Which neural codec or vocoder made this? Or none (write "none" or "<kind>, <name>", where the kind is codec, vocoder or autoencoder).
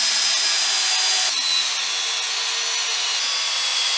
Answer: none